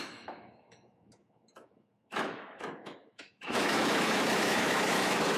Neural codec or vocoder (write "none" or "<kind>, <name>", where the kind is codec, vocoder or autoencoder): autoencoder, DAC-VAE